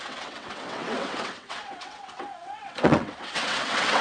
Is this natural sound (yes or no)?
no